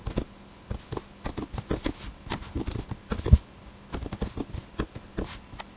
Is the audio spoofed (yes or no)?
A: no